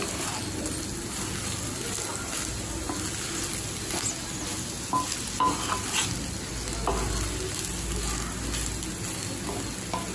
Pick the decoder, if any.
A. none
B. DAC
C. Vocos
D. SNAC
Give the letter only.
A